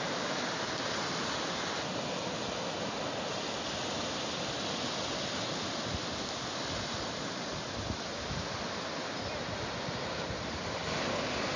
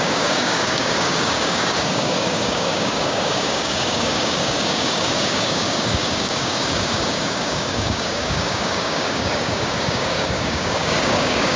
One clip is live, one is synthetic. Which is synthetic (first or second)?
second